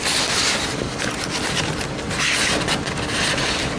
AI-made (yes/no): no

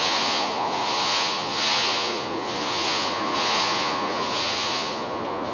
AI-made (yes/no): yes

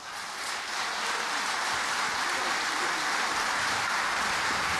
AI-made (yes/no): no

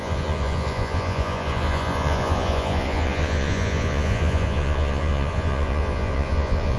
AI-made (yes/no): yes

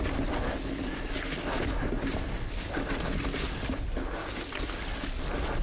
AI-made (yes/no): no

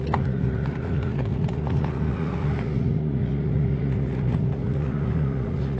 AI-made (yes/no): yes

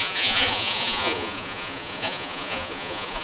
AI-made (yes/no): yes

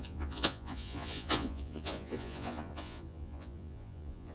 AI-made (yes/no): yes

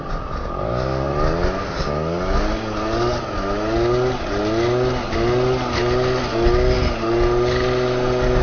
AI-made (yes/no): no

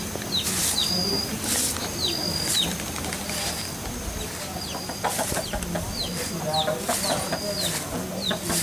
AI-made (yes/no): no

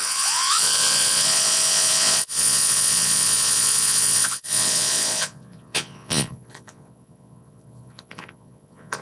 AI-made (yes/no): yes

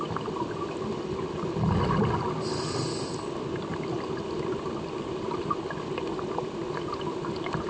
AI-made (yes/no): no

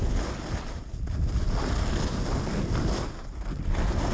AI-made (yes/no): no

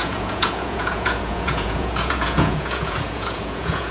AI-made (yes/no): yes